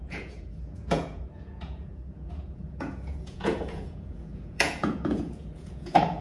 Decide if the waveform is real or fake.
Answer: fake